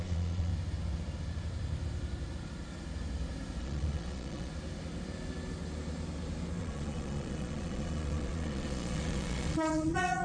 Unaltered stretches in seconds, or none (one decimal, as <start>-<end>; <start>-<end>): 0.5-3.6; 4.5-6.6